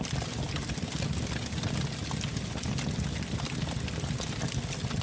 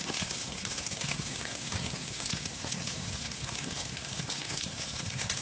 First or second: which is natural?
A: first